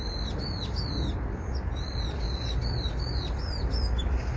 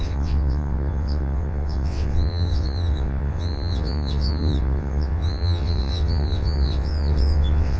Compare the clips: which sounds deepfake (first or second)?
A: second